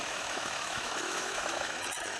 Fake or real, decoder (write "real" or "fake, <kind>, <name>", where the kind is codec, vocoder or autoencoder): fake, autoencoder, DAC-VAE